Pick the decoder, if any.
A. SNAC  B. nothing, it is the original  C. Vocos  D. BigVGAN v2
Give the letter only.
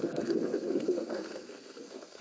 A